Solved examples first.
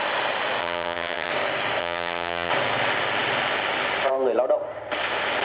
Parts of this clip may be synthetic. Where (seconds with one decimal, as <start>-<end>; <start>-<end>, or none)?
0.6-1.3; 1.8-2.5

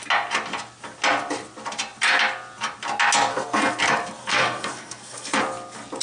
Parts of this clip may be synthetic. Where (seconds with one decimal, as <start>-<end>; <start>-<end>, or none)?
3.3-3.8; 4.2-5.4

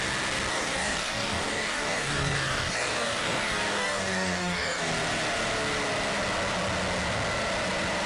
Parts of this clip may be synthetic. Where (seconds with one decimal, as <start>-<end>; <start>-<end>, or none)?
0.5-4.9

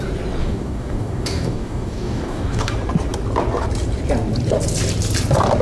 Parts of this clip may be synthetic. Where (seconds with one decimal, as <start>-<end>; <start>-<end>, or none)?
0.4-2.7

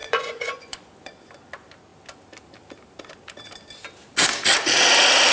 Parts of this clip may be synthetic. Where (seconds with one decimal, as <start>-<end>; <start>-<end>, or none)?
0.0-1.3

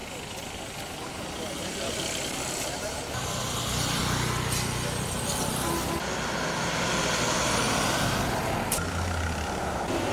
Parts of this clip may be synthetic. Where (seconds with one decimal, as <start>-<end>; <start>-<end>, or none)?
none

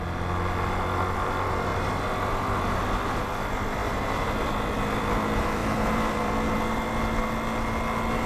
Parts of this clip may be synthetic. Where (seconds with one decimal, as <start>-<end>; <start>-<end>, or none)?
1.7-2.8; 3.8-5.1; 5.6-7.0